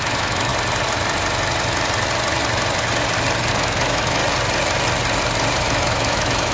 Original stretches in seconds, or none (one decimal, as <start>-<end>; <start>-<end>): 0.5-3.5; 4.2-5.6